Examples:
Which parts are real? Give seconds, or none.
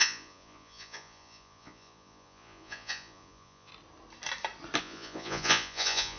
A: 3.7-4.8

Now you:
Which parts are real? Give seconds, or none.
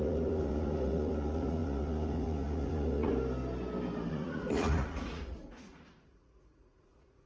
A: 3.1-4.1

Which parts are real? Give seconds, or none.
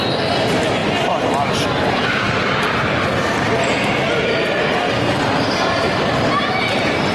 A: 0.0-7.1